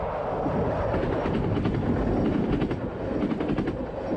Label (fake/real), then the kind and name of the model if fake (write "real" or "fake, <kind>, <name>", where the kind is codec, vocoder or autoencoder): real